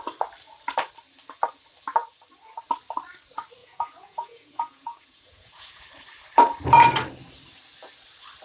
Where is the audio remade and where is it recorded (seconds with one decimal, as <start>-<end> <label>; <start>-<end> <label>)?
0.0-3.6 recorded; 3.6-5.8 remade; 5.8-8.4 recorded